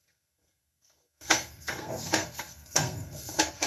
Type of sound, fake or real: fake